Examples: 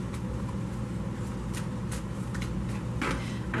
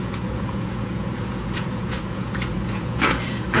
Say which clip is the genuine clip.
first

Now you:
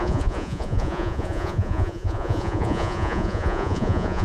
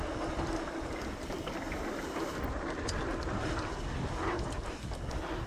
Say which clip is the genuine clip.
second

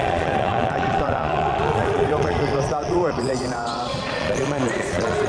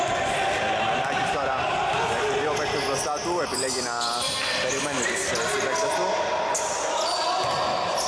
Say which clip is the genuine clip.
second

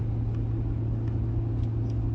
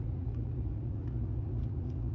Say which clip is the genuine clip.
first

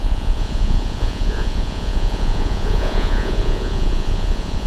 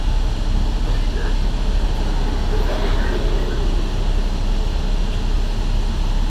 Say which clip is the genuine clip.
second